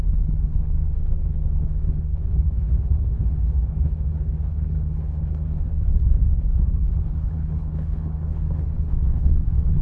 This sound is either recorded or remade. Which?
remade